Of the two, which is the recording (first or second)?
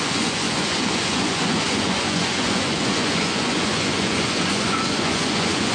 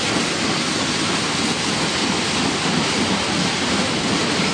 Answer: second